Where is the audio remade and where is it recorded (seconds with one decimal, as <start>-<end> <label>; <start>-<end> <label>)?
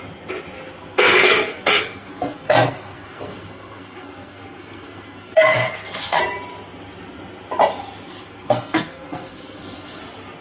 0.0-0.9 recorded; 0.9-6.2 remade; 6.2-8.1 recorded; 8.1-10.0 remade; 10.0-10.4 recorded